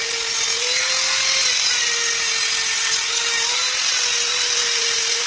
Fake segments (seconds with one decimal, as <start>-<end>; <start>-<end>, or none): none